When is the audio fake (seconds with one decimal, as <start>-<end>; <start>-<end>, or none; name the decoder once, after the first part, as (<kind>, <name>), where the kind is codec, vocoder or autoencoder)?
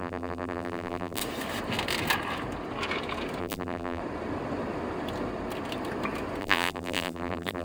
0.0-1.2 (vocoder, BigVGAN v2); 3.4-4.0; 6.4-7.6